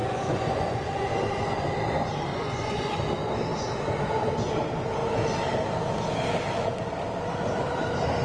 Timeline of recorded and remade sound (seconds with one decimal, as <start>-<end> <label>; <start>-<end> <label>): 0.0-1.1 remade; 1.1-2.3 recorded; 2.3-3.0 remade; 3.0-8.2 recorded